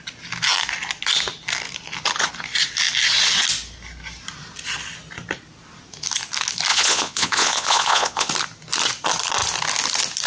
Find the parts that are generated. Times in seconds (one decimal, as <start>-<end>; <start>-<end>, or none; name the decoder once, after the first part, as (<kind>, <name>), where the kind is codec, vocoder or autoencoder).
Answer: 6.7-8.3 (vocoder, Vocos)